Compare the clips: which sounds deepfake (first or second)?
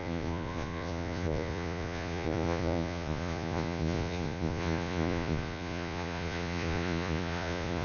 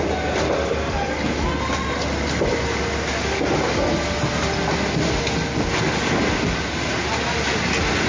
first